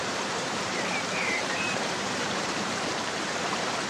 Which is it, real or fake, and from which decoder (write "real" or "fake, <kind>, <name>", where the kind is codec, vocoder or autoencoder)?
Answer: fake, vocoder, BigVGAN v2